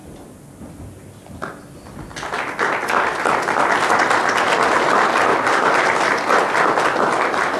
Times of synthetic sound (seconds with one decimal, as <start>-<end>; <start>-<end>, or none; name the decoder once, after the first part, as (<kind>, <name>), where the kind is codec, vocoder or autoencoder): 5.3-7.6 (vocoder, BigVGAN v2)